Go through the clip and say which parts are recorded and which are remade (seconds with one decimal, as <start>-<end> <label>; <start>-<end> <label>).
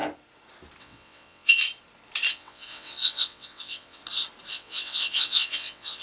0.0-0.8 recorded; 0.8-1.6 remade; 1.6-2.3 recorded; 2.3-4.0 remade; 4.0-4.5 recorded; 4.5-6.0 remade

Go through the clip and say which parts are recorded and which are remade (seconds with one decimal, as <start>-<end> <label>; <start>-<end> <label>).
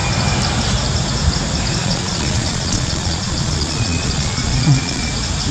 0.0-1.8 recorded; 1.8-5.1 remade; 5.1-5.5 recorded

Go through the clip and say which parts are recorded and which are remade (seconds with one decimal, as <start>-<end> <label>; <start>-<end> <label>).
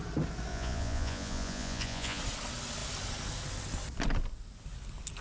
0.0-0.5 recorded; 0.5-2.2 remade; 2.2-5.2 recorded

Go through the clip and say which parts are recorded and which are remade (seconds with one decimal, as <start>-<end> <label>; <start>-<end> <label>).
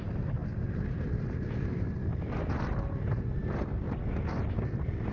0.0-5.1 recorded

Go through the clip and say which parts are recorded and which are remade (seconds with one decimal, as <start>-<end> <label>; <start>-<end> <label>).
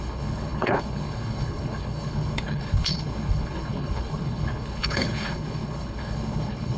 0.0-6.8 remade